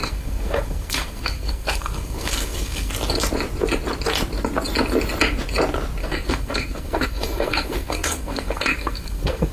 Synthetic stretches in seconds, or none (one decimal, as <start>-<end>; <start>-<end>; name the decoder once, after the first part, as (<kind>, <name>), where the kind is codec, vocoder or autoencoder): 0.0-2.9 (codec, SNAC); 6.0-9.5